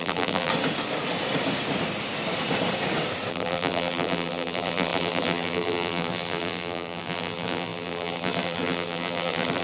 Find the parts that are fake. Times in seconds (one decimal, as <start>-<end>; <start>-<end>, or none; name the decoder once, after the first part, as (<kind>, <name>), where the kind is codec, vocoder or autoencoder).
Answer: 0.0-0.5 (vocoder, BigVGAN v2); 3.3-9.6